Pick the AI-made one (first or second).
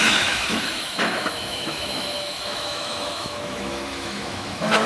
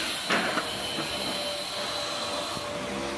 first